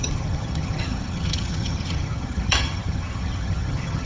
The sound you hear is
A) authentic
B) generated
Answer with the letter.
B